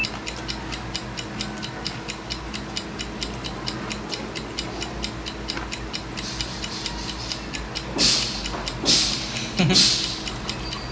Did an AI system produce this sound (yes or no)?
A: no